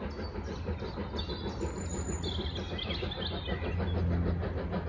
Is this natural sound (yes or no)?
yes